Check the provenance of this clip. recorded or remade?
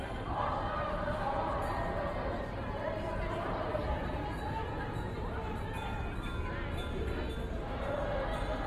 recorded